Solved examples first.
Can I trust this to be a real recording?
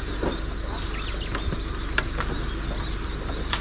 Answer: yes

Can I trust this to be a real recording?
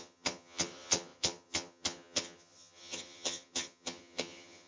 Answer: no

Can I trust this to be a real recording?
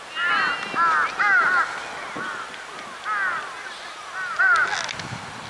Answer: yes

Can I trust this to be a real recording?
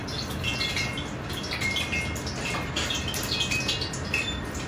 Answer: yes